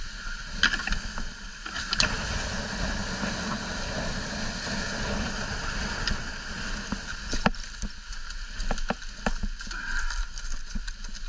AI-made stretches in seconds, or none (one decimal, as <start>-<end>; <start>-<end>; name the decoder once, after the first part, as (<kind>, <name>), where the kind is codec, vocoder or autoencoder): 3.0-5.9 (vocoder, BigVGAN v2)